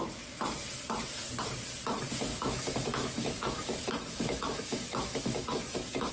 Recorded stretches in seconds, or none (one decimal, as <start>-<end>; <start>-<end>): 0.0-2.3